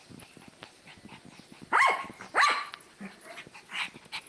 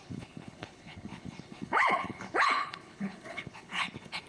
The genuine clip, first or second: first